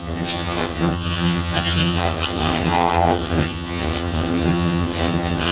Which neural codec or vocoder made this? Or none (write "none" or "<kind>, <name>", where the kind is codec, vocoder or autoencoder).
vocoder, HiFi-GAN